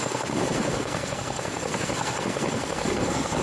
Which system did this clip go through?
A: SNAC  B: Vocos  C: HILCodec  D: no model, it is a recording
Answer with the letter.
A